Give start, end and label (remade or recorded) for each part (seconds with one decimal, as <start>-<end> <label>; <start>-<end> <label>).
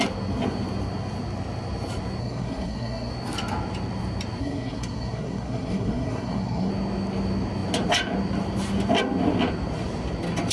0.0-2.2 recorded; 2.2-3.1 remade; 3.1-4.4 recorded; 4.4-6.7 remade; 6.7-10.5 recorded